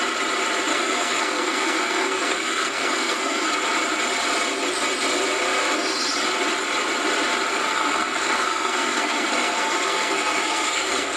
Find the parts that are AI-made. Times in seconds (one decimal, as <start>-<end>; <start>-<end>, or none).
0.7-3.5; 7.5-11.2